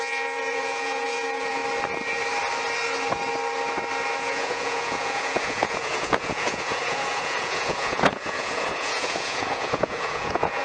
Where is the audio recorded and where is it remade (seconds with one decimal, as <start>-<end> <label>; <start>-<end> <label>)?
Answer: 0.0-1.6 remade; 1.6-4.2 recorded; 4.2-10.6 remade